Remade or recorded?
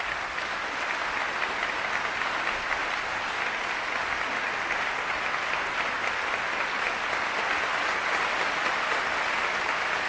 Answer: recorded